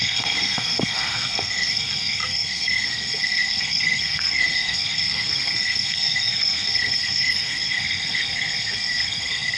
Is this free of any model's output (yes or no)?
no